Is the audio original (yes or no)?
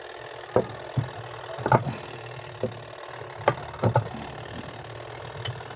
yes